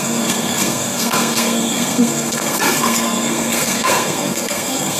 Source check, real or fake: fake